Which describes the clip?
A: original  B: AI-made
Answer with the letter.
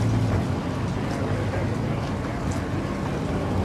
A